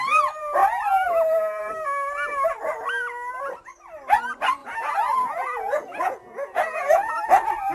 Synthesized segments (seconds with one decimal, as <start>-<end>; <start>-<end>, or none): 4.6-7.1